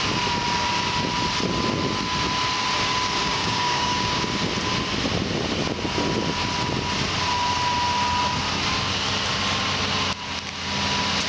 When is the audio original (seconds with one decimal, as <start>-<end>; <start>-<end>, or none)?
0.0-3.2; 4.2-11.3